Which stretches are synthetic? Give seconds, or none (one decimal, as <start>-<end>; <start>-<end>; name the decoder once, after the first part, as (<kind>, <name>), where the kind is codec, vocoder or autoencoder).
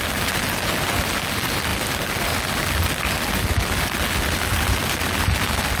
none